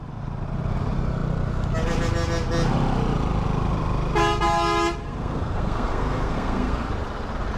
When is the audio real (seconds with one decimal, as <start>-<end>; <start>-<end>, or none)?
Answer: 0.0-5.0; 6.9-7.6